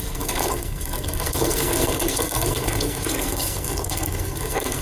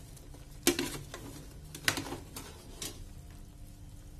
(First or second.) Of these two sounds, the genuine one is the second